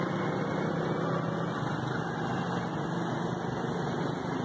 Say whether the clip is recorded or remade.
recorded